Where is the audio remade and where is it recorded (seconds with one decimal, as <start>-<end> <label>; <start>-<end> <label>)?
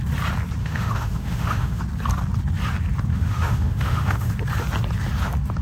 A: 0.0-0.6 recorded; 0.6-1.8 remade; 1.8-3.1 recorded; 3.1-4.3 remade; 4.3-5.6 recorded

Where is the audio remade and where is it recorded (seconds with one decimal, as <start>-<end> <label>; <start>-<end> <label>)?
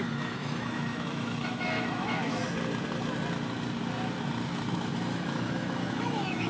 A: 0.0-2.4 remade; 2.4-4.7 recorded; 4.7-6.5 remade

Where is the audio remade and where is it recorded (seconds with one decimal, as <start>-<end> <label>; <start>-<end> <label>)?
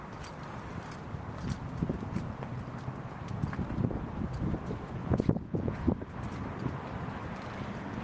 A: 0.0-5.0 recorded; 5.0-5.8 remade; 5.8-8.0 recorded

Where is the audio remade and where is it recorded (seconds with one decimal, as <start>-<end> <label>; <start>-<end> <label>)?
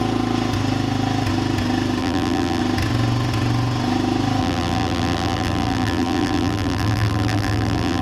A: 0.0-2.0 recorded; 2.0-2.6 remade; 2.6-4.4 recorded; 4.4-8.0 remade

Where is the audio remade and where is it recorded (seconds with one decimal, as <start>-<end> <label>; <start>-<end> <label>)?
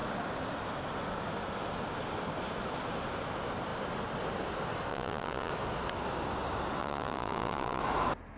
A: 0.0-4.9 recorded; 4.9-5.5 remade; 5.5-6.8 recorded; 6.8-7.8 remade; 7.8-8.4 recorded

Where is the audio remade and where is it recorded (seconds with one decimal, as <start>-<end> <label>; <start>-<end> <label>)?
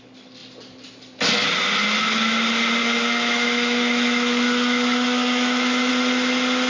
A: 0.0-2.8 recorded; 2.8-5.9 remade; 5.9-6.7 recorded